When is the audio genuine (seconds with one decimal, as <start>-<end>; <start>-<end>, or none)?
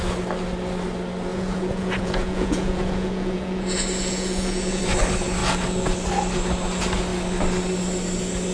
0.0-1.3; 4.8-8.5